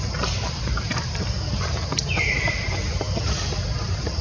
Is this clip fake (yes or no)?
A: yes